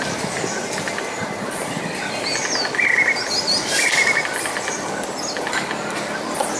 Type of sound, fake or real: real